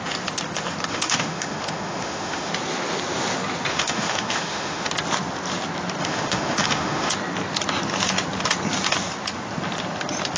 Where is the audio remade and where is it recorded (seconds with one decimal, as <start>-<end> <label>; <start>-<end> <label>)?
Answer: 0.0-0.9 recorded; 0.9-2.5 remade; 2.5-3.7 recorded; 3.7-4.9 remade; 4.9-6.0 recorded; 6.0-7.1 remade; 7.1-10.4 recorded